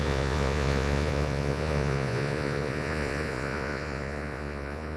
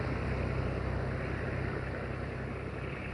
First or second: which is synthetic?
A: first